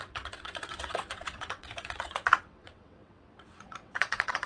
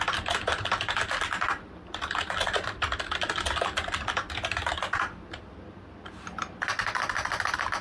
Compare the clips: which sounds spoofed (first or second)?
first